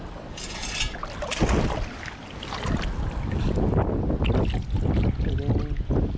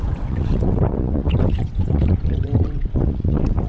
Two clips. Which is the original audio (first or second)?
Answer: first